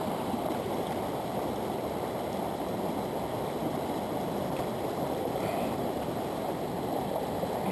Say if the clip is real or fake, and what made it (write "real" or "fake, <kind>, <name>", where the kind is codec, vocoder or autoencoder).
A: real